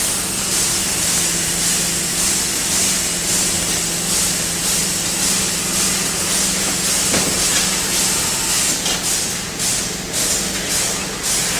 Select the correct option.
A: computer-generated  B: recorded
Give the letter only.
B